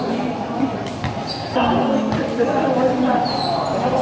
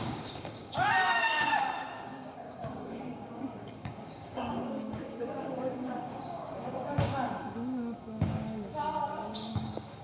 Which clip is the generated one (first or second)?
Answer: second